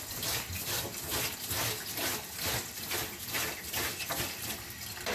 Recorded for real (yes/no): yes